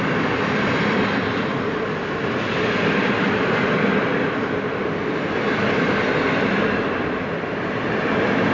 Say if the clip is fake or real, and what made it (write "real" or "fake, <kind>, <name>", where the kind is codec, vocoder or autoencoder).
real